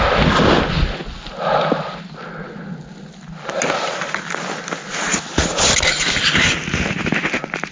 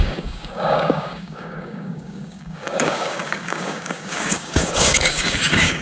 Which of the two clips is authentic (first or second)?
first